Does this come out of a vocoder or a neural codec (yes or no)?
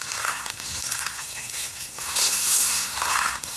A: yes